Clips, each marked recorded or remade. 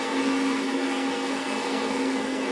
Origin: remade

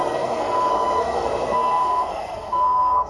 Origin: remade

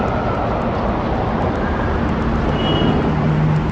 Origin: recorded